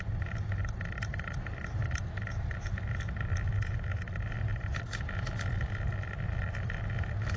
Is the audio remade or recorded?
recorded